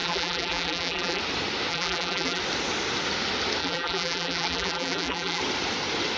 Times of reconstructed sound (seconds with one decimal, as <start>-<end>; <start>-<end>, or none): 0.0-1.2; 1.7-2.4; 3.6-5.4